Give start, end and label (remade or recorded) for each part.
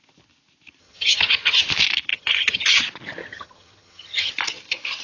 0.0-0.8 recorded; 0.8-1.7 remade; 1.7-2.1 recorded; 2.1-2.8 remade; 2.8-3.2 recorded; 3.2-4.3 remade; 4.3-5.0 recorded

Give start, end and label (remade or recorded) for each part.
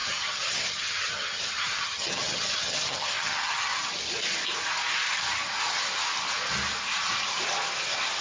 0.0-3.7 remade; 3.7-8.2 recorded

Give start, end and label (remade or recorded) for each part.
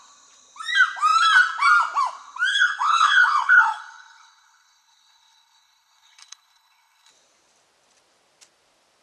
0.0-2.5 recorded; 2.5-7.1 remade; 7.1-9.0 recorded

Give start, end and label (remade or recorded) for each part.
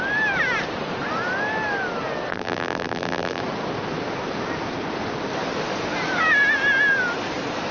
0.0-2.3 recorded; 2.3-3.4 remade; 3.4-7.7 recorded